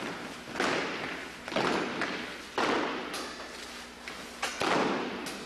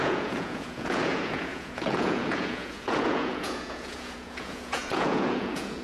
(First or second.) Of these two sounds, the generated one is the second